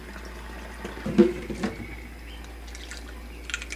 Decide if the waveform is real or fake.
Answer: real